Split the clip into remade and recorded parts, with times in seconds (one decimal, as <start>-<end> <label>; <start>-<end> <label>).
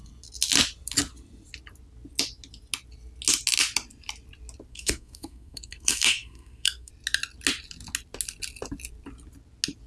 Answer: 0.0-4.7 recorded; 4.7-6.9 remade; 6.9-9.9 recorded